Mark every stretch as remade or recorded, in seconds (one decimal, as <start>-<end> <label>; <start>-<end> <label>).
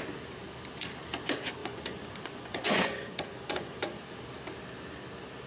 0.0-1.6 recorded; 1.6-4.0 remade; 4.0-5.5 recorded